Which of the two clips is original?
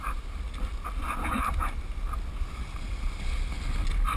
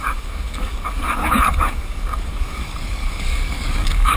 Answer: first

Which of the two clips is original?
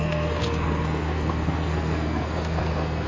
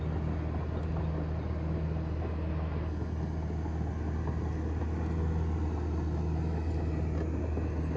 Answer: second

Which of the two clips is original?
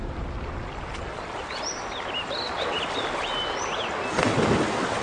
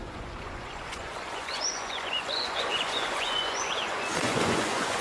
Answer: first